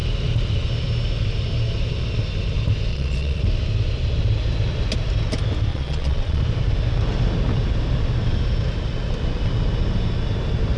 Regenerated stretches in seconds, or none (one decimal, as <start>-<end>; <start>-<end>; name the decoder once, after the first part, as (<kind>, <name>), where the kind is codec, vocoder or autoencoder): 2.9-3.4 (vocoder, Vocos); 5.7-6.4

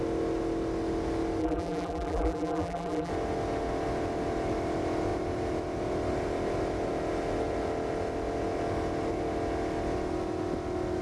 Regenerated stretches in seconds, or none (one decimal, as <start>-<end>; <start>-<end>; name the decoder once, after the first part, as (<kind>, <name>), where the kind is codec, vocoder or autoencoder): 1.4-3.1 (vocoder, BigVGAN v2)